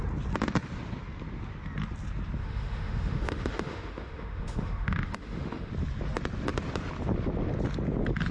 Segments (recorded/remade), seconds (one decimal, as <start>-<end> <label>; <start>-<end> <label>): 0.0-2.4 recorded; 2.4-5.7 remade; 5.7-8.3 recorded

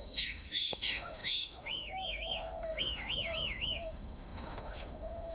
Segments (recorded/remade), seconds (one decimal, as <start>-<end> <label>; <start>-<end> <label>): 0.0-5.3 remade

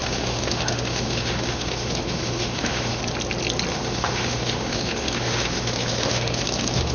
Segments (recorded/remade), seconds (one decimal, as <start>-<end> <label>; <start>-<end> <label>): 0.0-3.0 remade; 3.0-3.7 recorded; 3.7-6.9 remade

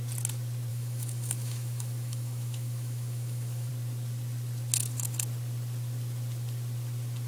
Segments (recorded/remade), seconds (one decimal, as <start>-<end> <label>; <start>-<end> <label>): 0.0-0.7 recorded; 0.7-3.7 remade; 3.7-7.3 recorded

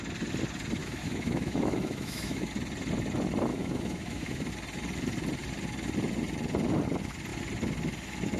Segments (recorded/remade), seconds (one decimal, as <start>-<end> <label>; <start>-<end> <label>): 0.0-0.8 recorded; 0.8-2.5 remade; 2.5-3.5 recorded; 3.5-4.5 remade; 4.5-8.4 recorded

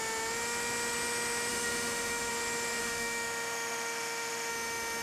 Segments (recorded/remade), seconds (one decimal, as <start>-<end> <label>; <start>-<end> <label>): 0.0-1.5 recorded; 1.5-2.3 remade; 2.3-2.8 recorded; 2.8-4.5 remade; 4.5-5.0 recorded